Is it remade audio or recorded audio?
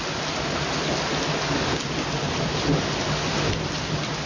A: recorded